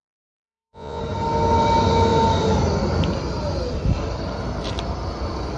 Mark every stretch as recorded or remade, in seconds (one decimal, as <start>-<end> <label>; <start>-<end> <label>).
0.0-1.0 remade; 1.0-5.6 recorded